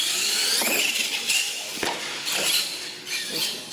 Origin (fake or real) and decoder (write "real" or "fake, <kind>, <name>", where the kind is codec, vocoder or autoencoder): real